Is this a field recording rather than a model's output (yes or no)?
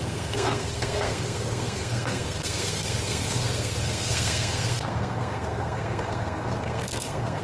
no